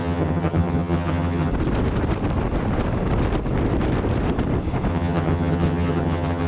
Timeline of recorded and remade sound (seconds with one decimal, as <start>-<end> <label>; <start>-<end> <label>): 0.0-1.5 remade; 1.5-4.9 recorded; 4.9-6.5 remade